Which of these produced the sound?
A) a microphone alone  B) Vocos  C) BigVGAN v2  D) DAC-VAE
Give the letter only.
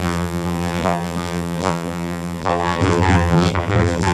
C